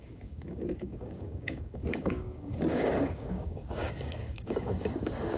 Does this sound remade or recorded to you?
remade